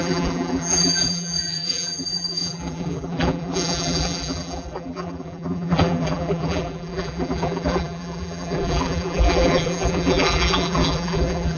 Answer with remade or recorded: remade